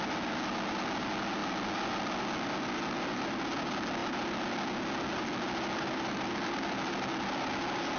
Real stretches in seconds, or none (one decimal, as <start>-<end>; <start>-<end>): 0.0-8.0